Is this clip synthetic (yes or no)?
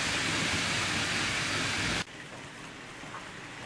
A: no